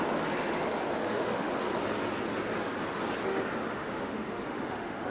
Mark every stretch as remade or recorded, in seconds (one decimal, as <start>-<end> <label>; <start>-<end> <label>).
0.0-1.0 recorded; 1.0-1.5 remade; 1.5-3.6 recorded; 3.6-5.1 remade